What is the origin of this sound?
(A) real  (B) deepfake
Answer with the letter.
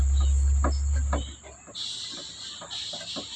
A